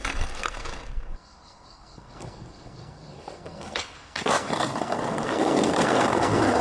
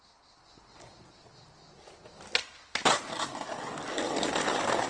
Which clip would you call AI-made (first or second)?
first